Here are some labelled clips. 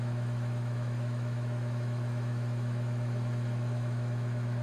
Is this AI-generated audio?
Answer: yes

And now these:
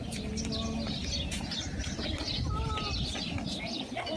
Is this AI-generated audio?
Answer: no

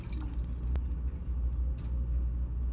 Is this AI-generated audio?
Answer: no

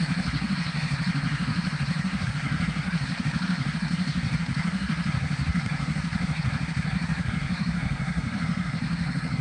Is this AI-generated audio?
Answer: yes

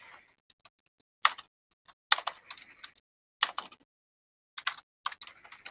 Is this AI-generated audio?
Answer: no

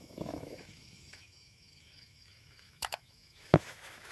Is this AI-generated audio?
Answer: yes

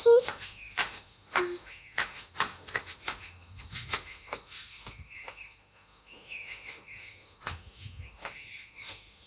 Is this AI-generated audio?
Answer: yes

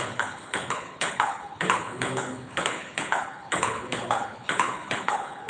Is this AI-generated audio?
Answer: yes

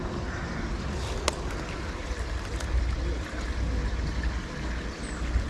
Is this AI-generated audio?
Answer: no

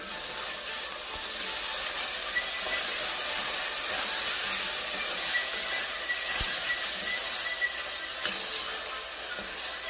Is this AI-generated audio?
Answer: no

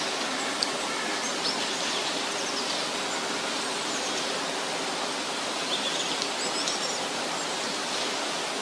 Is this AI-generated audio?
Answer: no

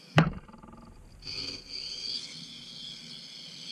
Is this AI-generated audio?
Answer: no